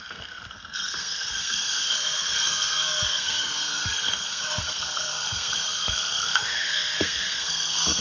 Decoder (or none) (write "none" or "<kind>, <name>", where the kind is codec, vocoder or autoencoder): codec, SNAC